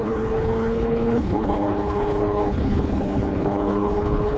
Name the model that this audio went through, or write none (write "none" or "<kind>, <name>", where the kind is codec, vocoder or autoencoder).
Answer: codec, HILCodec